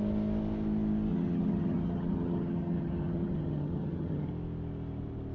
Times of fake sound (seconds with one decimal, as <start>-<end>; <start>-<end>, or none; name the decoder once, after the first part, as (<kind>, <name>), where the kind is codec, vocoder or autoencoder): 1.1-4.3 (vocoder, HiFi-GAN)